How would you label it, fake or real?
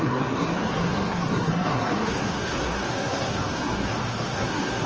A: fake